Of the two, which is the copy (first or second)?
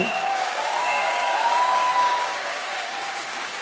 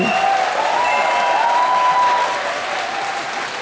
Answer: first